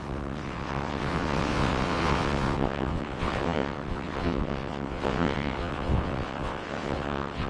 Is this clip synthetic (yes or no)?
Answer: yes